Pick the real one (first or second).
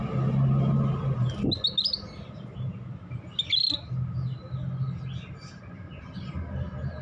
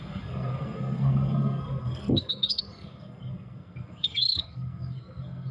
first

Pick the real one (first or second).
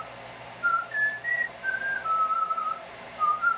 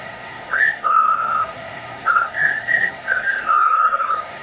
first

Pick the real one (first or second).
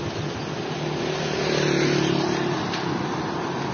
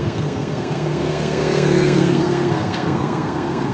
first